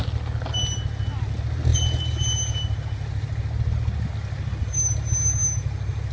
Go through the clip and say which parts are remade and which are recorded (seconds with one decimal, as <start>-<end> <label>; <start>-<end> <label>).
0.0-6.1 recorded